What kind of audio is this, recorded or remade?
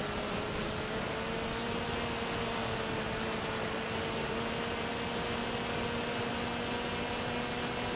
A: recorded